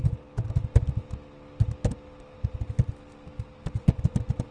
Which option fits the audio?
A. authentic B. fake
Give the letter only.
A